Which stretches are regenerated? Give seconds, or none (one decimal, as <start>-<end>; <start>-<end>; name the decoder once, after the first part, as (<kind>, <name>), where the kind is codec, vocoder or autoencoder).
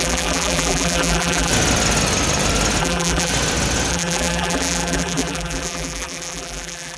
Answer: 0.0-1.5 (vocoder, BigVGAN v2); 2.8-3.3; 3.9-7.0